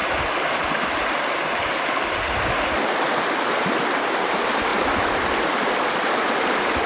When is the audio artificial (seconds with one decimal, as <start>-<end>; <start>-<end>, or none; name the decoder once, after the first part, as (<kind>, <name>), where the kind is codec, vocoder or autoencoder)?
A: none